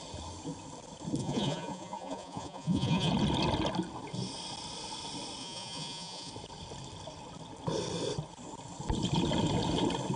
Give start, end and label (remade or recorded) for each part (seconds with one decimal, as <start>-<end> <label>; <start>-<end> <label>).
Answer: 0.0-1.2 recorded; 1.2-3.1 remade; 3.1-5.4 recorded; 5.4-6.3 remade; 6.3-10.2 recorded